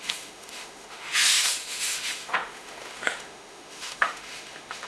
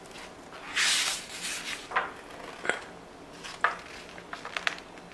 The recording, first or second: second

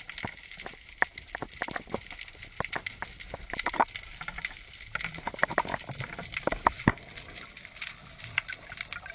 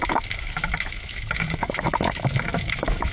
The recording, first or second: first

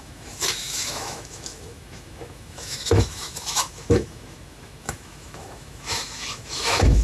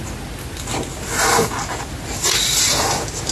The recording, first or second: second